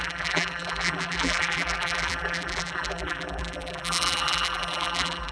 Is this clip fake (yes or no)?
yes